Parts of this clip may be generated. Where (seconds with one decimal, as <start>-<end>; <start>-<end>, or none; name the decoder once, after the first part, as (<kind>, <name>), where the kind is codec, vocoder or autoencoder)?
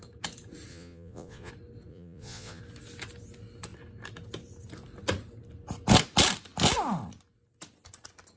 0.7-1.5 (vocoder, Vocos); 1.9-2.6